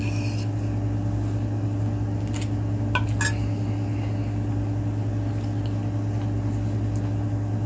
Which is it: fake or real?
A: real